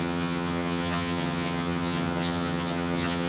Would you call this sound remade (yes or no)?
yes